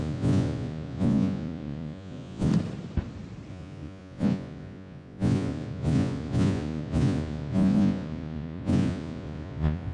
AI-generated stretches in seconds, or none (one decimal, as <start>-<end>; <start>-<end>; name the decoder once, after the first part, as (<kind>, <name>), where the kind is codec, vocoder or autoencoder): 0.0-2.5 (vocoder, Vocos); 3.5-9.9